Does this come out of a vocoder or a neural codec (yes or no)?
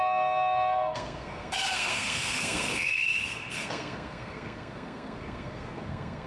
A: yes